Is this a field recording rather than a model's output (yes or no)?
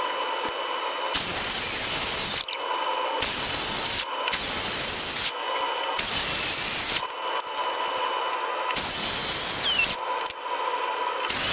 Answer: yes